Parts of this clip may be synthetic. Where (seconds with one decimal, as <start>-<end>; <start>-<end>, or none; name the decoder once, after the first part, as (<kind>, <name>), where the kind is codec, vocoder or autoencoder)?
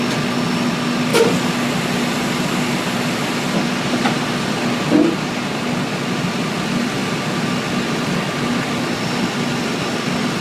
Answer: none